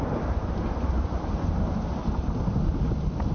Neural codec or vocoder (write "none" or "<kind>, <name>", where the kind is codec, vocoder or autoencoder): none